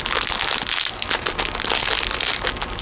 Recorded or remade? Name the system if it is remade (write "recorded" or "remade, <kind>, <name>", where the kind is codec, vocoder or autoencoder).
recorded